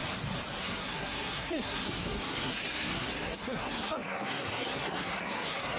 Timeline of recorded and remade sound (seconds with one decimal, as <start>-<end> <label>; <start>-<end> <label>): 0.0-0.6 recorded; 0.6-5.8 remade